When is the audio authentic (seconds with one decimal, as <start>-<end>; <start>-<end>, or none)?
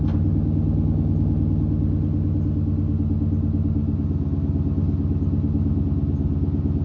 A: 0.0-6.8